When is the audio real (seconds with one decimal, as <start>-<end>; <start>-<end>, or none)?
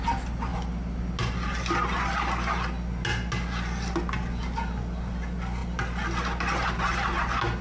0.0-7.6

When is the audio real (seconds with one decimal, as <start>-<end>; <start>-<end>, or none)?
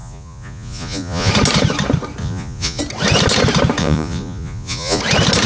1.3-2.2; 2.8-3.8; 5.0-5.5